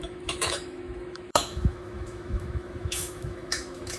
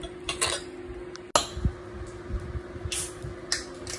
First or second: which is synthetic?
first